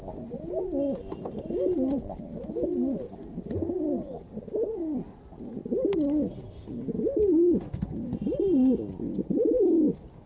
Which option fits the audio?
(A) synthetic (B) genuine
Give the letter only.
B